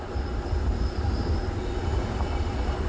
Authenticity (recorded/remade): recorded